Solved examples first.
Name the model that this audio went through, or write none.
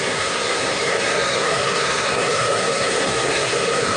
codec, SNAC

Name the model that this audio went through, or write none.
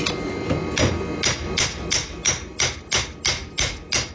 none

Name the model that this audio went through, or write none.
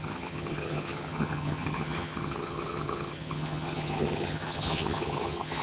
vocoder, HiFi-GAN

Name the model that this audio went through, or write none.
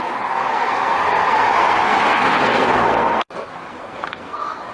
codec, SNAC